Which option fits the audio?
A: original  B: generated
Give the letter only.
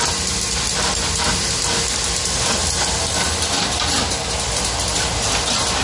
A